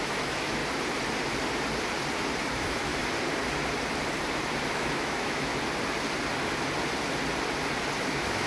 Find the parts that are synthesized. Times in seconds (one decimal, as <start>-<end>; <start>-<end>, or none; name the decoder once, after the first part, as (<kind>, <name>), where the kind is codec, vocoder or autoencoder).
0.0-0.6 (autoencoder, DAC-VAE); 2.5-2.9; 4.7-5.5; 8.0-8.5